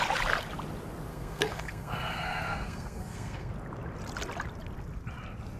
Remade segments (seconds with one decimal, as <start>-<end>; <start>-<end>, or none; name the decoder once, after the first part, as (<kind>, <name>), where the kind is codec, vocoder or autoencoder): 1.1-3.5 (codec, SNAC)